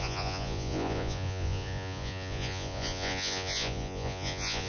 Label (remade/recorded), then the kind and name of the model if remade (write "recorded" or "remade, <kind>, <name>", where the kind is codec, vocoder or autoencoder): remade, vocoder, Vocos